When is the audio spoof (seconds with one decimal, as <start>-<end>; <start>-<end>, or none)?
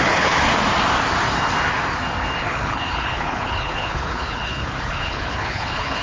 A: 0.0-0.5; 2.4-6.0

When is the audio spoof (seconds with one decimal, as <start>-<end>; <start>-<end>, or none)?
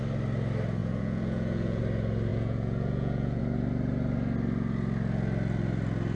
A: 0.8-1.8; 2.3-3.4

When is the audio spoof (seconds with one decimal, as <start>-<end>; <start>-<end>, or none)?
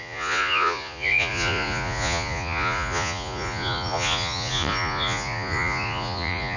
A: 0.0-6.6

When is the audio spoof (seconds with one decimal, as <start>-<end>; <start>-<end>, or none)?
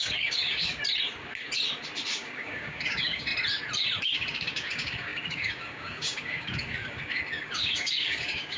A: 0.0-0.7; 2.1-3.3; 4.0-8.6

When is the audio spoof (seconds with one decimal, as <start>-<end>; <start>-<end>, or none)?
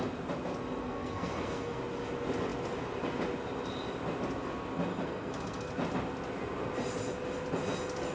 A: 0.8-1.8; 4.9-5.7